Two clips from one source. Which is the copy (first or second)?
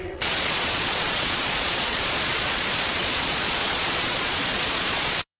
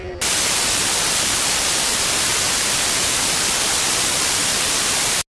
first